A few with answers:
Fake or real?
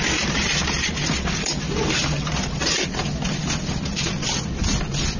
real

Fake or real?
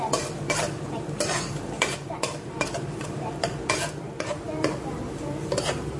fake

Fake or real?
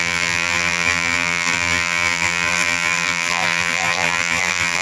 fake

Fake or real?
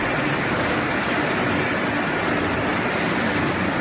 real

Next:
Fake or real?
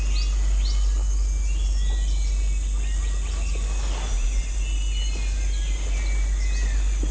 real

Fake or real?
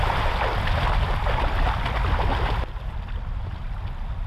real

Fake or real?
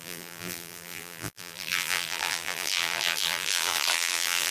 fake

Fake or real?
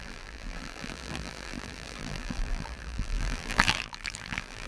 fake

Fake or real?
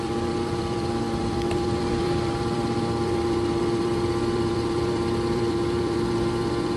fake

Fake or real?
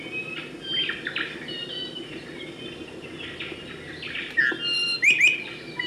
real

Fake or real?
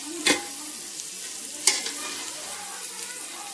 real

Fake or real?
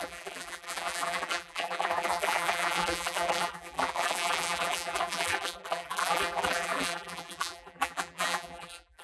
fake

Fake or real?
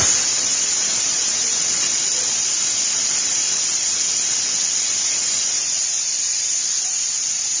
fake